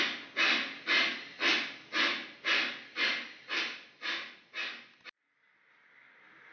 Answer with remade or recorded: recorded